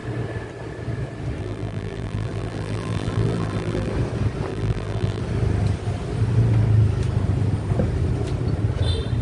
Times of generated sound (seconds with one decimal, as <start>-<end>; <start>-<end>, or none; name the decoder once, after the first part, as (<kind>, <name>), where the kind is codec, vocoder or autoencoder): 1.4-3.9 (vocoder, BigVGAN v2); 4.5-5.2